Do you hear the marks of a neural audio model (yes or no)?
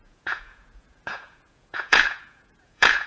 yes